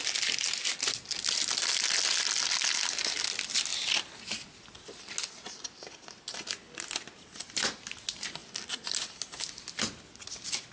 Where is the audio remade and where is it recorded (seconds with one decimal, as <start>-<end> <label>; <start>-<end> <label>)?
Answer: 0.0-8.4 recorded; 8.4-10.7 remade